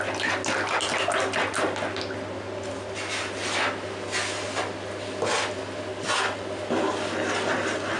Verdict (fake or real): real